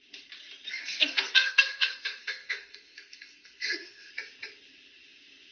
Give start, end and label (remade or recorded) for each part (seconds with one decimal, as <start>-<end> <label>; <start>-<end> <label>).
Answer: 0.0-0.8 recorded; 0.8-4.1 remade; 4.1-5.5 recorded